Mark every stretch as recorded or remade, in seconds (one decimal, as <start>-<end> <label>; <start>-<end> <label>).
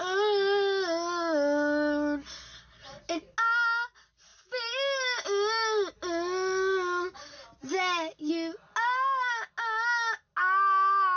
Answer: 0.0-11.2 recorded